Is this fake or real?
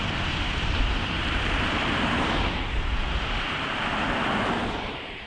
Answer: fake